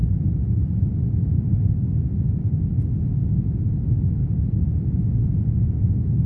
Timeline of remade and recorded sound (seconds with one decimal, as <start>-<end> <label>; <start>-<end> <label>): 0.0-1.3 remade; 1.3-6.3 recorded